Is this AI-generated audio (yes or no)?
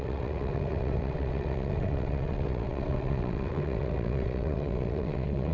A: yes